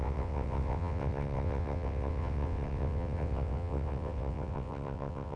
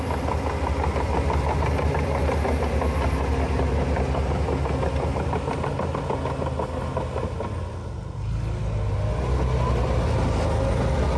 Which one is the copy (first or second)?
first